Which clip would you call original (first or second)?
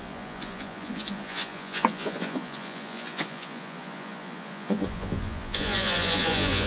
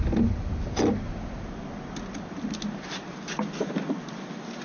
second